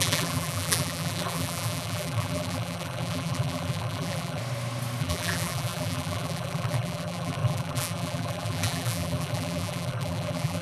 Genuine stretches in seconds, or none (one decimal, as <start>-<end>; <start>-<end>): 4.4-5.0